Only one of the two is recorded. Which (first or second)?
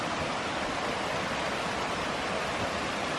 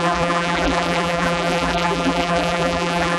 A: first